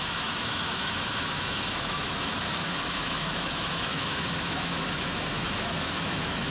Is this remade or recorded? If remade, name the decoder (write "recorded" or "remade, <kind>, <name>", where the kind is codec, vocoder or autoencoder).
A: remade, autoencoder, DAC-VAE